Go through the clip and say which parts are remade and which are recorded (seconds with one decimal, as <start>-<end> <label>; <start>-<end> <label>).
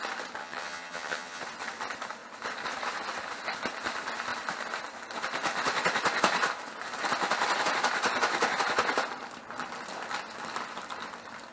0.0-0.4 recorded; 0.4-1.4 remade; 1.4-11.5 recorded